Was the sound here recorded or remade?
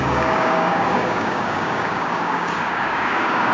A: remade